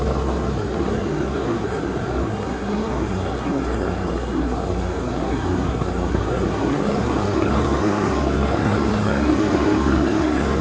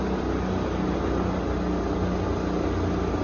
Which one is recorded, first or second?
second